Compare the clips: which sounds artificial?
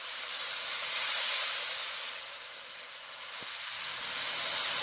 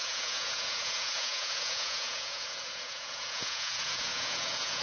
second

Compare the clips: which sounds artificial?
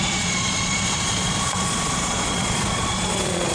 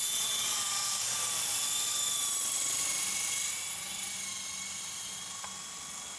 first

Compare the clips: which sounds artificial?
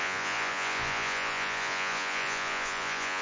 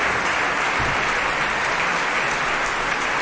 first